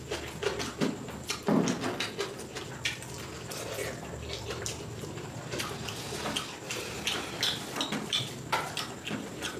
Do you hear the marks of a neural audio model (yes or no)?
no